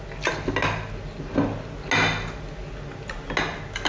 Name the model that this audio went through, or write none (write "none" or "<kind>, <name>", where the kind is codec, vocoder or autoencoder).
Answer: none